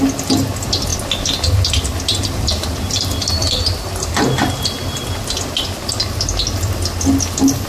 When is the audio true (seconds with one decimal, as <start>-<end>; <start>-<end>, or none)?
0.0-2.1; 5.9-7.7